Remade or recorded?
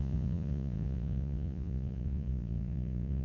remade